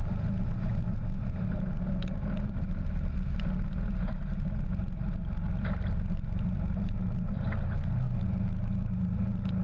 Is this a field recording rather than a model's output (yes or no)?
yes